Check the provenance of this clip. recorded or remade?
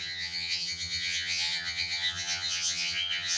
remade